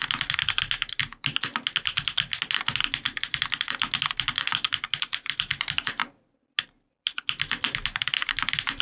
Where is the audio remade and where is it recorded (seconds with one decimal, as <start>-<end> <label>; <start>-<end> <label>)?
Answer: 0.0-8.8 recorded